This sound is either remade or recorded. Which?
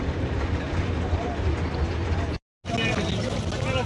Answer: recorded